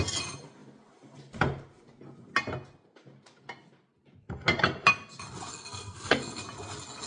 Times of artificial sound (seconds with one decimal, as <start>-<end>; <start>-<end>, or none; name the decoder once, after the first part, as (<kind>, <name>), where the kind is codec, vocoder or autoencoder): 5.5-6.4 (codec, SNAC)